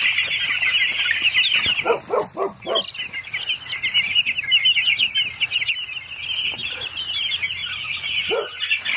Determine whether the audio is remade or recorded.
recorded